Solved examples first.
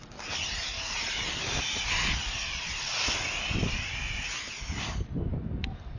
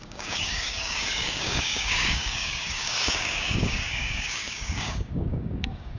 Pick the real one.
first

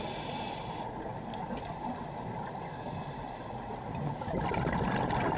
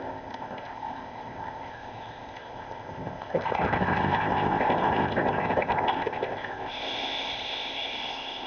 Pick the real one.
first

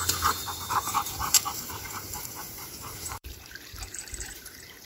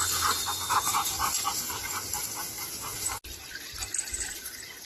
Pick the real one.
second